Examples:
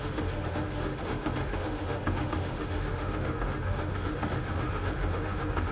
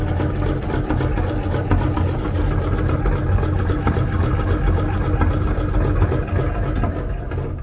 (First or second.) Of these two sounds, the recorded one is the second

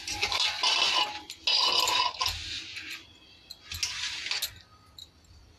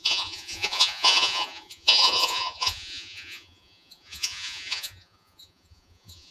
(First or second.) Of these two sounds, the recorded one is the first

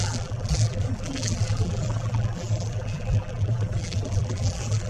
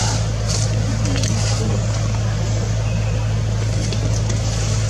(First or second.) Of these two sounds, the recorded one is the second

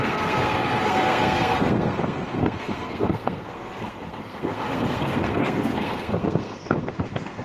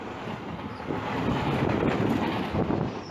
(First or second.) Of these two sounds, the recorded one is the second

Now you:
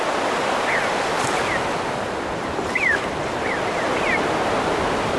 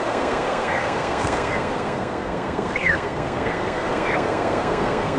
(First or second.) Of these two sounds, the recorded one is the first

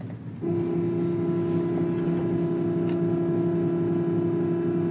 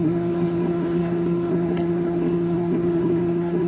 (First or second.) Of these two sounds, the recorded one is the first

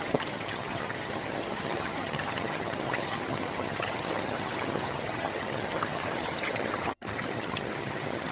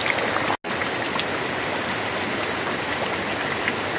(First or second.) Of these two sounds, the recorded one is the second